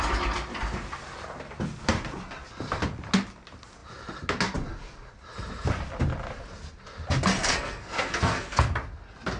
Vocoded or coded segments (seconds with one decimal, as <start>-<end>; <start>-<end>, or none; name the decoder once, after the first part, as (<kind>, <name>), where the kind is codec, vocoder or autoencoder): 7.4-8.7 (codec, SNAC)